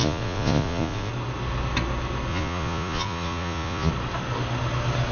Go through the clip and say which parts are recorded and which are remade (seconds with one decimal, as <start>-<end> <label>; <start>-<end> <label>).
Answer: 0.0-1.1 remade; 1.1-2.3 recorded; 2.3-3.9 remade; 3.9-5.1 recorded